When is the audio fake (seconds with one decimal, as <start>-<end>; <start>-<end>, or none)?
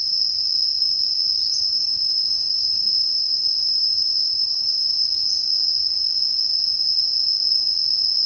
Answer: 1.6-5.1